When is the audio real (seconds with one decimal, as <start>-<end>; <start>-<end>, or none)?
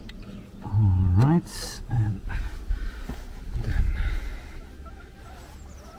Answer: 0.0-1.5; 2.4-6.0